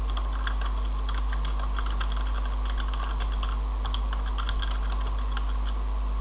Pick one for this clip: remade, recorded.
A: recorded